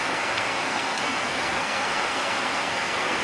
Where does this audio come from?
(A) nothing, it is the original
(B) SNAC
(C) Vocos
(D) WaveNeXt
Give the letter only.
B